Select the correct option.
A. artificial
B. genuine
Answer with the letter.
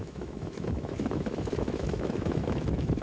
A